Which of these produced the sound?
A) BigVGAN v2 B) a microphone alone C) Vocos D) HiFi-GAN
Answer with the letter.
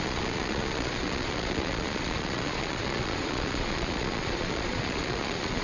C